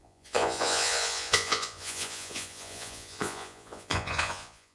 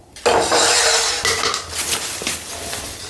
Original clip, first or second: second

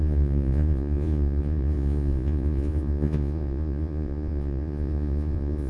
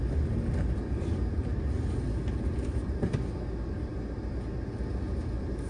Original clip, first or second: second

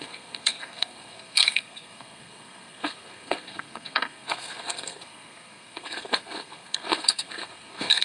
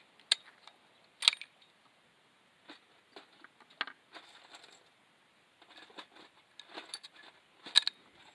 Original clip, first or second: second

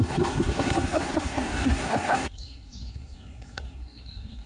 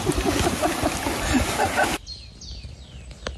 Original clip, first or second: second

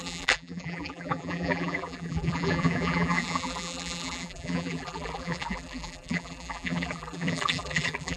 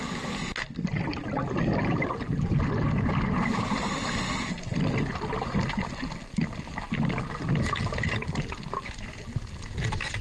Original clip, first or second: second